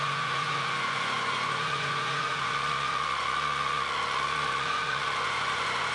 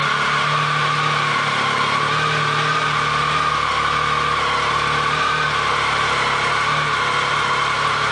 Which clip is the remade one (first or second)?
first